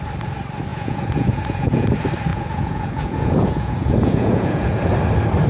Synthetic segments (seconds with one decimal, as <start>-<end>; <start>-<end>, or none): 0.7-1.9; 2.3-4.9